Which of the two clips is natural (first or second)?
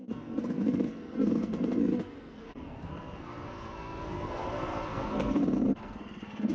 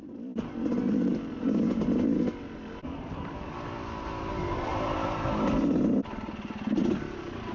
second